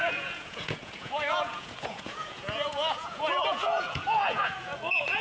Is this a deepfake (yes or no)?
yes